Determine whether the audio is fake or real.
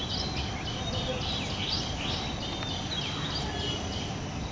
real